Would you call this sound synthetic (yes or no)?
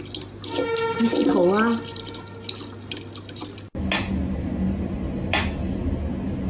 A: no